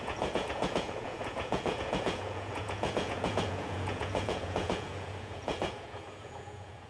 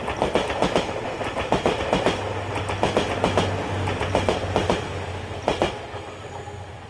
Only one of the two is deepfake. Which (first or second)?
first